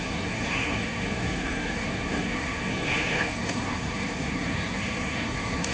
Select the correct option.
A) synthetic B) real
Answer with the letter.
A